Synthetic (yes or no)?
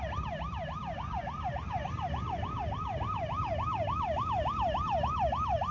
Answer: yes